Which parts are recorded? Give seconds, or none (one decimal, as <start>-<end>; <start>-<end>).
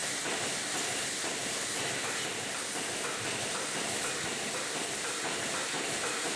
0.0-6.4